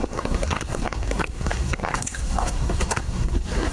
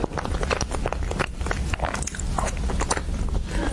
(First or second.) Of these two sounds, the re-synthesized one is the first